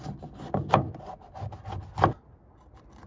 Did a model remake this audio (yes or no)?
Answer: no